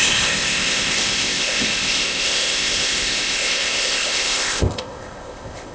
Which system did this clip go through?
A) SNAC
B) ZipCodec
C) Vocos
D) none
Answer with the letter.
B